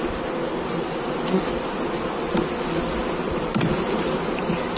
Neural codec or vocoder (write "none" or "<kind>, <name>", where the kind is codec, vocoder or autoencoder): none